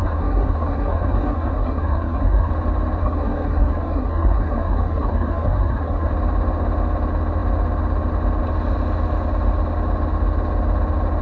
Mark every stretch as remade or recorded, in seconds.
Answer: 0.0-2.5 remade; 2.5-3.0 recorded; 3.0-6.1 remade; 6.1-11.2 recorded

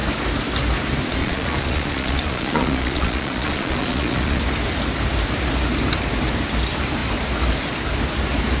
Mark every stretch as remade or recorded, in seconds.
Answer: 0.0-1.2 recorded; 1.2-4.4 remade; 4.4-8.6 recorded

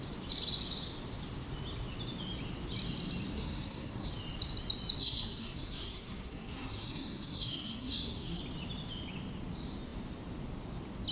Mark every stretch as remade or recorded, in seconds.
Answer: 0.0-3.3 recorded; 3.3-4.1 remade; 4.1-5.0 recorded; 5.0-8.4 remade; 8.4-11.1 recorded